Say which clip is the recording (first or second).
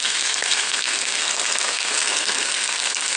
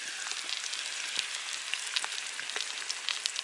second